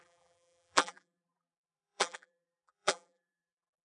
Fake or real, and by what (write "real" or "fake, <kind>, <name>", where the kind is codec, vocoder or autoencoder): fake, vocoder, BigVGAN v2